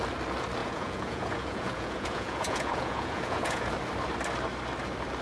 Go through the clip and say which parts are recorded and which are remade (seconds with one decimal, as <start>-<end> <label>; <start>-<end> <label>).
0.0-0.6 recorded; 0.6-3.7 remade; 3.7-5.2 recorded